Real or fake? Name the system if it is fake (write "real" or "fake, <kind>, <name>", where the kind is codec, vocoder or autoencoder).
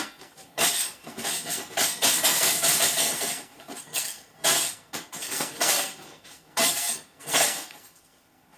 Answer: fake, codec, SNAC